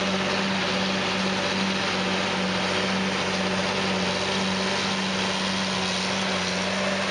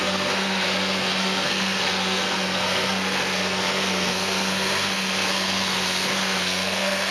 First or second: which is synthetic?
second